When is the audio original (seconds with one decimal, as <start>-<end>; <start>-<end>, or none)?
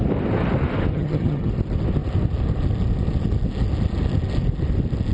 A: 0.0-0.9; 1.5-5.1